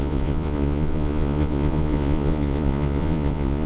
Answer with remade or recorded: remade